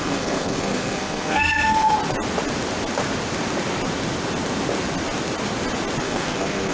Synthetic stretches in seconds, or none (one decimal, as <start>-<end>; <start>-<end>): 0.0-2.0; 6.0-6.7